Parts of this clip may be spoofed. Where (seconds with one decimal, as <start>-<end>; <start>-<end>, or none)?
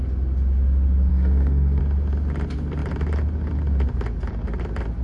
1.1-1.8